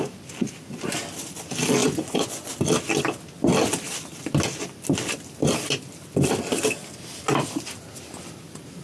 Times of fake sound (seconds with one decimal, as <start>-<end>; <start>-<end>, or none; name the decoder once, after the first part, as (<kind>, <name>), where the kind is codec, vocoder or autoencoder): 1.8-2.5 (vocoder, Vocos)